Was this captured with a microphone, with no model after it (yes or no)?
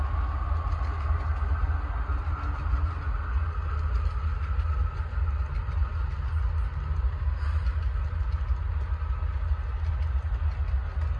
yes